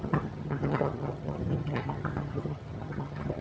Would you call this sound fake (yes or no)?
yes